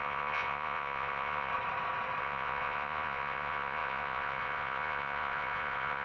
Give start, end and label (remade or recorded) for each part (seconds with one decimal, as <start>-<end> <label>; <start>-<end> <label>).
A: 0.0-1.5 remade; 1.5-2.2 recorded; 2.2-6.0 remade